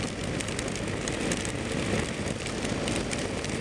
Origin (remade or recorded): recorded